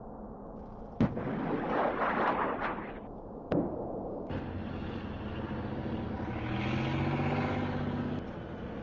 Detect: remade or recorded recorded